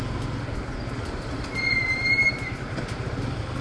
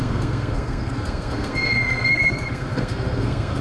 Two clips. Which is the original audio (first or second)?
first